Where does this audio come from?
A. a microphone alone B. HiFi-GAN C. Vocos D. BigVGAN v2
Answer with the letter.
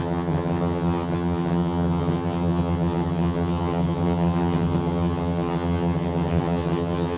B